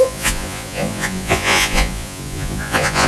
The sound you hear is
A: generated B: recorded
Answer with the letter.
A